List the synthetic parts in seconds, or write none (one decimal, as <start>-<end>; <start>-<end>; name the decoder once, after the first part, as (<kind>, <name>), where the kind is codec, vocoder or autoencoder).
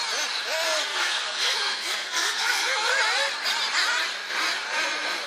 0.9-2.9 (codec, SNAC)